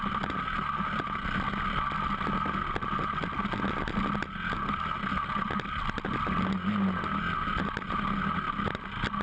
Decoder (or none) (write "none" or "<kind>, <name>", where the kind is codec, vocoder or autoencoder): none